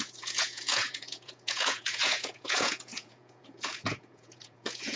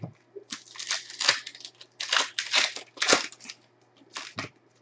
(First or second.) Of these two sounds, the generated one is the first